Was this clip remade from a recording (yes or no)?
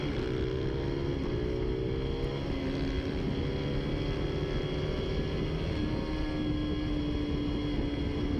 no